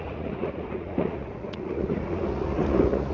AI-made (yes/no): yes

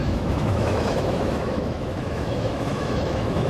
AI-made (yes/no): yes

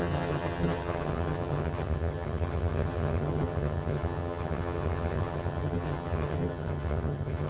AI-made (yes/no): yes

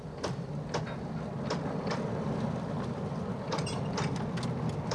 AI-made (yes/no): no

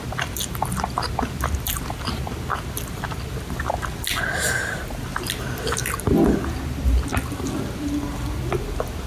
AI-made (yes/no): no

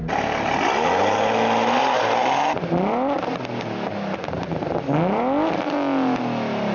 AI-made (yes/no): no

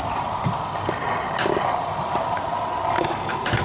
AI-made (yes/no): no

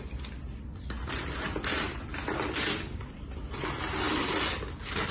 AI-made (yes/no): no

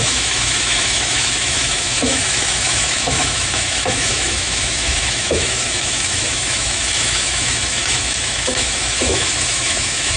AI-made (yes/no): yes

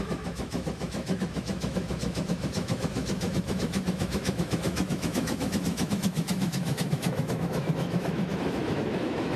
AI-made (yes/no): yes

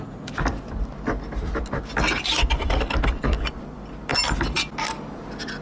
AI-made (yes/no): no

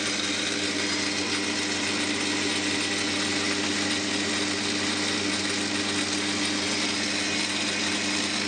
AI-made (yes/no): no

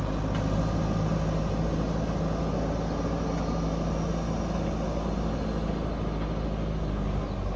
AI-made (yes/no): no